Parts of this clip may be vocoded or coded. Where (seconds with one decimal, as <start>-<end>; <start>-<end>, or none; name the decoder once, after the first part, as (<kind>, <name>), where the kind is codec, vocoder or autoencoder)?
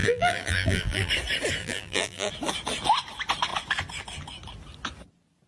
0.0-1.1 (vocoder, BigVGAN v2); 1.6-2.3